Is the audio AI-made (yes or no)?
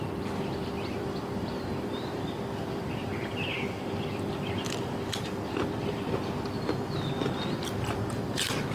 yes